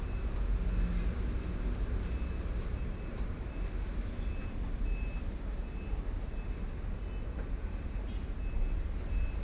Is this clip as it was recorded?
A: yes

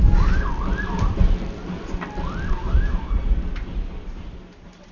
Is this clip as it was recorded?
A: yes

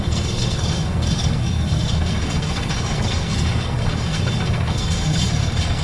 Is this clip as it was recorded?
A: no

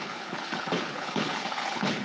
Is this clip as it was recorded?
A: no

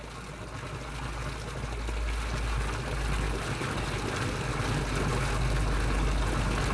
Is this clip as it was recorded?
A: yes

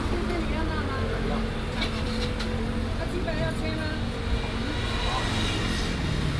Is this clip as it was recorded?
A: yes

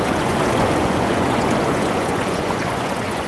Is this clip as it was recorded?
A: no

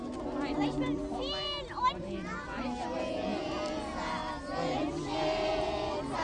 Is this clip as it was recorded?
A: yes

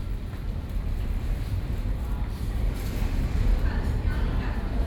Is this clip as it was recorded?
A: no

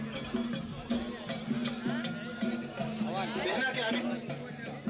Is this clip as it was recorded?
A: yes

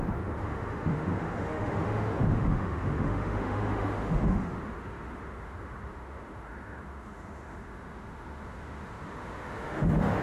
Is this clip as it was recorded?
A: no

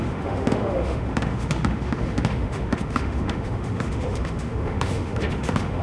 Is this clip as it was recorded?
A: no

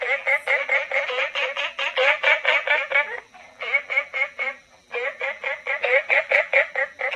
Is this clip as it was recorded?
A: no